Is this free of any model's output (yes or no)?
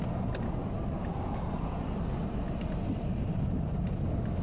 no